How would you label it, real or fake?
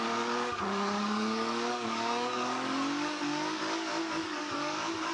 fake